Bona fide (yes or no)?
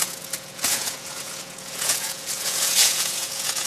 no